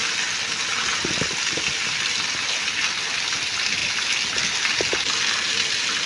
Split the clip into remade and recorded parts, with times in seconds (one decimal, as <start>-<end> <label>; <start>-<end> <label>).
0.0-6.1 recorded